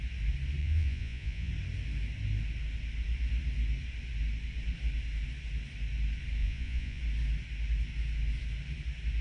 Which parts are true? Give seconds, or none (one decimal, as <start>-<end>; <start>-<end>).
0.0-0.6; 1.5-6.4; 7.0-9.2